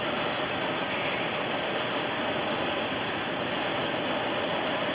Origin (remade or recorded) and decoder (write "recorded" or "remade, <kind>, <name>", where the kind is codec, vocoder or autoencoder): recorded